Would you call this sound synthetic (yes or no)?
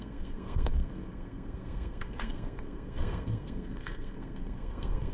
yes